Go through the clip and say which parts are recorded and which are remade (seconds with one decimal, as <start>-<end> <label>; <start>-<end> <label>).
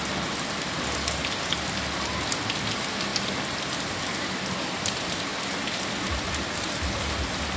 0.0-7.6 recorded